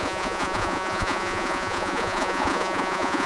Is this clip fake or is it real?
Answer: fake